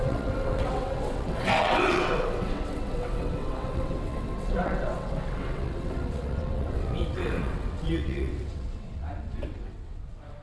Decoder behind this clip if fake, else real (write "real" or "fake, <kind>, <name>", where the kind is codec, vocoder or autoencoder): fake, vocoder, WaveNeXt